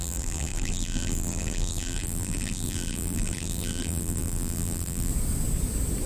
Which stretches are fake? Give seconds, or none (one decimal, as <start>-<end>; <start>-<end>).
0.0-5.1